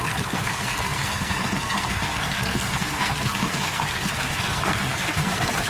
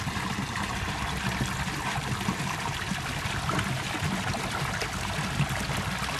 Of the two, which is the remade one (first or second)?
first